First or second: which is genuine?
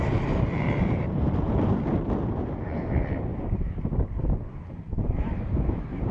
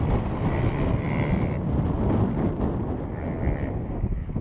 second